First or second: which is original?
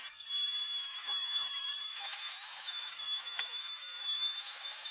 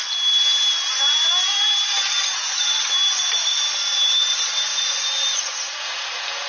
second